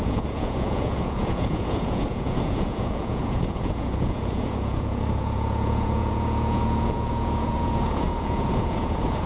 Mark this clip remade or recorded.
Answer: remade